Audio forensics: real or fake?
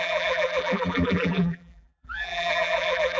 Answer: fake